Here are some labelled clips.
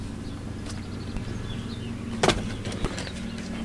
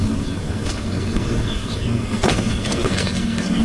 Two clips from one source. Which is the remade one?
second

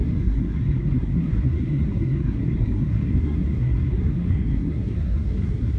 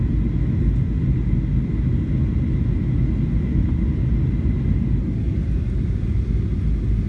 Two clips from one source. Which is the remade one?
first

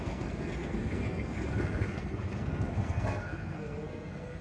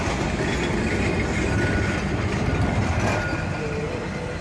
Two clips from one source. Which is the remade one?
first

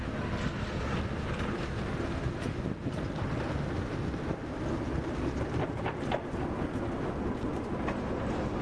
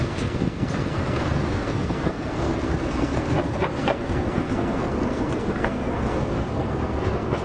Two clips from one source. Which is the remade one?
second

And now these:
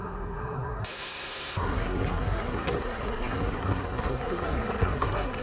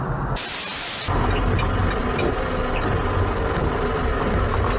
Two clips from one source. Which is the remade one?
first